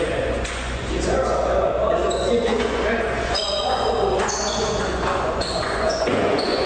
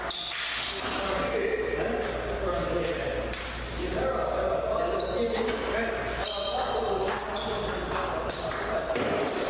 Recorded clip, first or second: second